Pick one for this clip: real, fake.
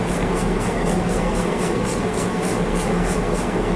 fake